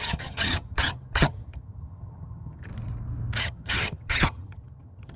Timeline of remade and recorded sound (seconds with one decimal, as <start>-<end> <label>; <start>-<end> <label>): 0.0-2.7 remade; 2.7-3.4 recorded; 3.4-5.2 remade

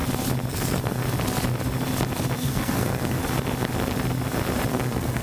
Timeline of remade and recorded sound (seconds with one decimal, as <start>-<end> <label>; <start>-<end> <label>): 0.0-0.5 recorded; 0.5-1.0 remade; 1.0-2.4 recorded; 2.4-3.2 remade; 3.2-4.7 recorded; 4.7-5.2 remade

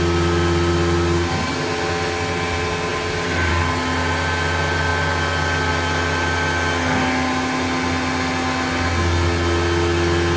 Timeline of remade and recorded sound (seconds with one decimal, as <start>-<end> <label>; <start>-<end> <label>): 0.0-10.4 recorded

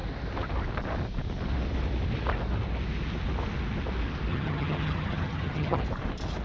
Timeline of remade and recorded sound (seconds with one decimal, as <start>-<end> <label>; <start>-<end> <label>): 0.0-4.3 recorded; 4.3-5.8 remade; 5.8-6.4 recorded

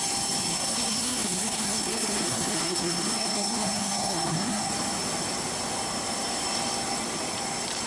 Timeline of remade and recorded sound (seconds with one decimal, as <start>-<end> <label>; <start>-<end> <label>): 0.0-0.5 recorded; 0.5-4.7 remade; 4.7-7.9 recorded